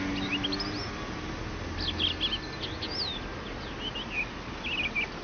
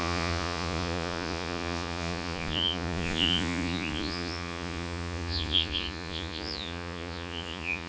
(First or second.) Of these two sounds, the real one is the first